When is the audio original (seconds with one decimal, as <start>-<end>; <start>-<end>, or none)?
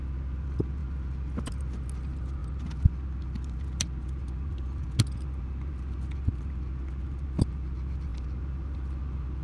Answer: 0.0-9.4